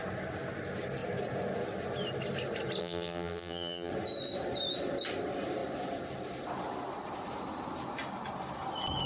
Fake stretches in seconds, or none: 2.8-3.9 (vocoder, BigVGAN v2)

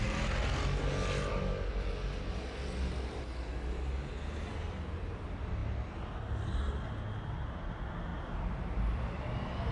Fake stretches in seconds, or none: none

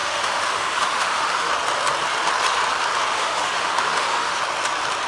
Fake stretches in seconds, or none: 0.0-1.5 (autoencoder, DAC-VAE); 3.1-4.4

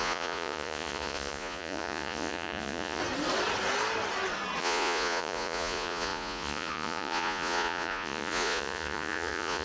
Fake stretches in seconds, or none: 0.0-3.0 (vocoder, Vocos); 4.6-9.6

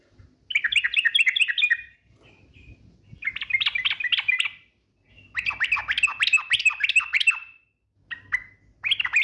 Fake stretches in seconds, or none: none